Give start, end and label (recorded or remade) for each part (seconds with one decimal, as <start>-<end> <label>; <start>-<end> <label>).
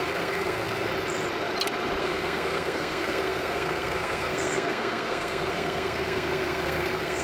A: 0.0-0.9 remade; 0.9-2.0 recorded; 2.0-7.2 remade